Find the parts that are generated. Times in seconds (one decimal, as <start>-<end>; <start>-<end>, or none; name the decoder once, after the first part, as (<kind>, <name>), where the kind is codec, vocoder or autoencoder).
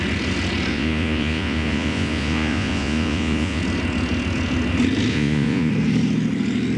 0.7-3.6 (vocoder, Vocos); 5.1-5.7